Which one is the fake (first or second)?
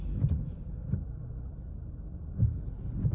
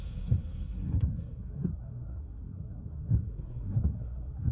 second